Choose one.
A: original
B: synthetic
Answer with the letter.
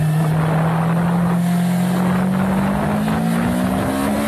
A